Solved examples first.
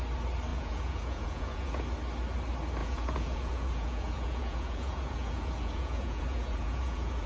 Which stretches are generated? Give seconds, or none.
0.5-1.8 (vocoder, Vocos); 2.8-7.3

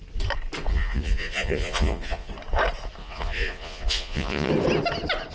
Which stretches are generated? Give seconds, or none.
0.7-2.3 (vocoder, Vocos); 3.0-4.5

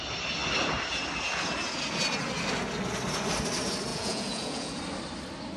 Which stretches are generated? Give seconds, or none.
3.9-4.8 (vocoder, Vocos)

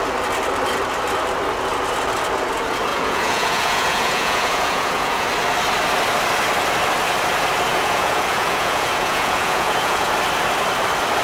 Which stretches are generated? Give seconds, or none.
2.9-5.3 (vocoder, Vocos); 7.7-10.1

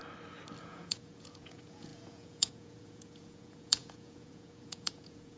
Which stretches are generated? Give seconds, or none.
0.6-5.4 (vocoder, Vocos)

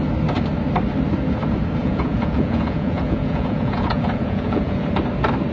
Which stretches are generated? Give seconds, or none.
1.8-5.0 (vocoder, Vocos)

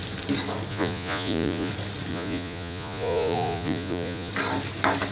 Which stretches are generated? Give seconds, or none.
0.7-1.7 (vocoder, Vocos); 2.1-4.3